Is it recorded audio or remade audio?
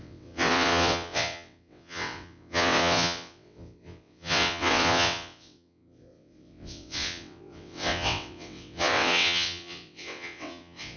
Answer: remade